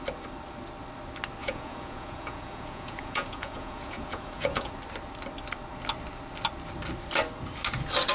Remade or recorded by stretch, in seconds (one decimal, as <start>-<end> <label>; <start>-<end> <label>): 0.0-1.4 recorded; 1.4-4.7 remade; 4.7-8.1 recorded